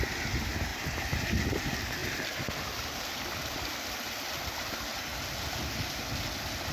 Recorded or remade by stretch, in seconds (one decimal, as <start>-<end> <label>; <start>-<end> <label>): 0.0-2.0 recorded; 2.0-6.0 remade; 6.0-6.7 recorded